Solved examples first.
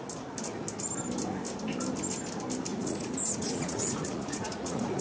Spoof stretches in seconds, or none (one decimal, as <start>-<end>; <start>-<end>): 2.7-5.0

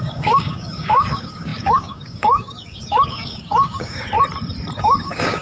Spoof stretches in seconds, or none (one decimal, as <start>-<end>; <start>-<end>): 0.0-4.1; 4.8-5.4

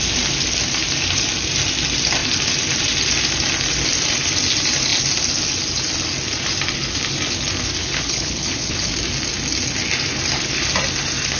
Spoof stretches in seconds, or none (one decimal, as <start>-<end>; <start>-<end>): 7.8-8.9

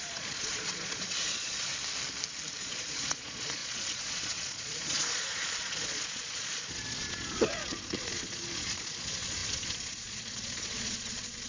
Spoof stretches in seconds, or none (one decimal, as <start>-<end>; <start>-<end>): 0.0-1.7; 2.6-11.5